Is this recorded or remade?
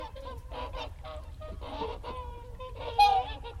remade